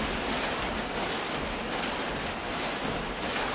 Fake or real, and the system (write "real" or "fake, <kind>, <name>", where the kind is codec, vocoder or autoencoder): real